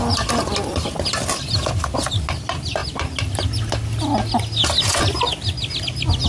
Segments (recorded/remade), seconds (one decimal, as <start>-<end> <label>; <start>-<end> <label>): 0.0-6.3 recorded